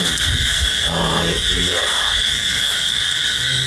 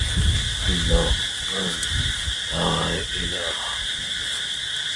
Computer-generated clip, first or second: first